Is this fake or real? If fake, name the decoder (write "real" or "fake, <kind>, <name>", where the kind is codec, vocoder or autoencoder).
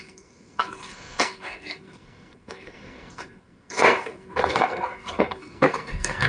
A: fake, codec, SNAC